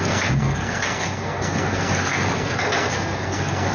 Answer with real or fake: fake